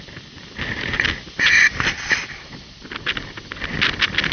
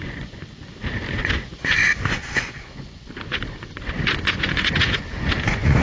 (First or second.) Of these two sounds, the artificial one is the second